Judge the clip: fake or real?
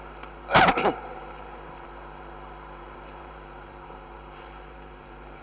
fake